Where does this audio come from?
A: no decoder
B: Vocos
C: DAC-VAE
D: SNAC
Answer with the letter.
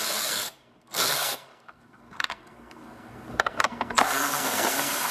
D